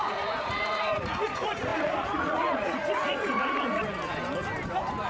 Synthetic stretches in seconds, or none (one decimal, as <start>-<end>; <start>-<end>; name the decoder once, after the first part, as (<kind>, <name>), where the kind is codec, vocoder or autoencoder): 0.0-3.8 (vocoder, Vocos)